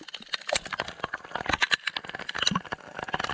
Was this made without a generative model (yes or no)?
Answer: yes